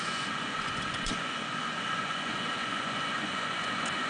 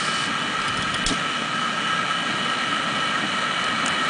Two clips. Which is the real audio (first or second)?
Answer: second